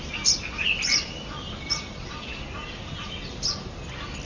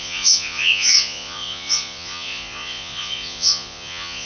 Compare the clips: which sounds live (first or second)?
first